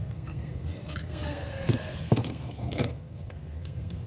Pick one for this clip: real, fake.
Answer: fake